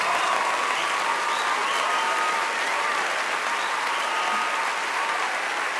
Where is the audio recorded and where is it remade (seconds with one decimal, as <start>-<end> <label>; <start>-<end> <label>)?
0.0-5.8 recorded